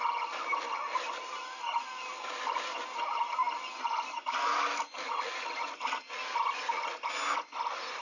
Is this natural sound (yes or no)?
yes